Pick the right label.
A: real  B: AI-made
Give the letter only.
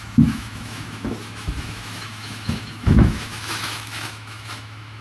B